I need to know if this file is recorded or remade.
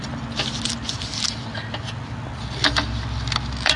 recorded